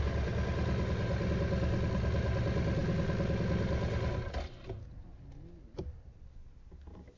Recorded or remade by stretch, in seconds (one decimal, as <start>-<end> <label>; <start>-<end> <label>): 0.0-7.2 recorded